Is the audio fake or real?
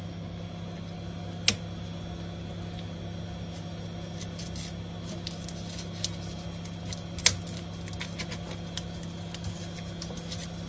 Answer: real